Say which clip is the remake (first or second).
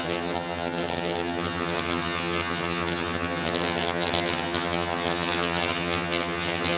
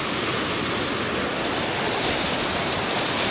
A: first